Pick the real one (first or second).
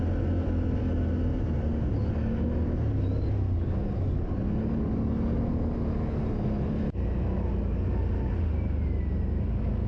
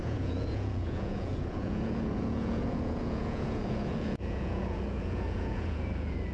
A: first